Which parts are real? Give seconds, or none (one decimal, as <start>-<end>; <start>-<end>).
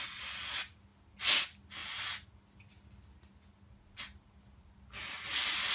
0.0-5.7